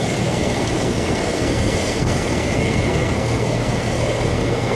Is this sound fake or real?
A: fake